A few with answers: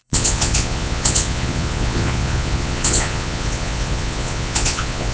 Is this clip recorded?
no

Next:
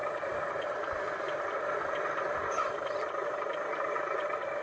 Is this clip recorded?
yes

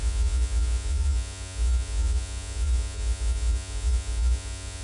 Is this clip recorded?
no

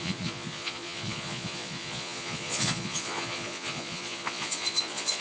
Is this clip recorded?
no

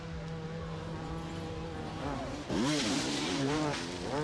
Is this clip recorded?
yes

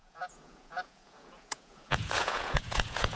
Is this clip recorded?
no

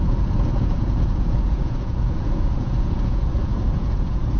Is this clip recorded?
no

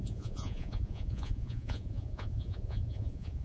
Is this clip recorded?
no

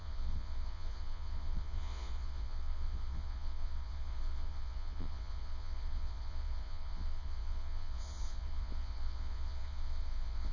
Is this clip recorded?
no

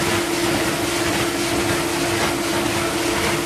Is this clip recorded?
yes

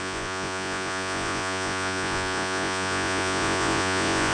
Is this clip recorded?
no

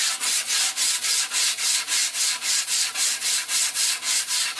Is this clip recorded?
no